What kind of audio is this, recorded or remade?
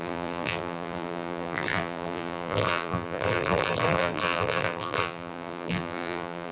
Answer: remade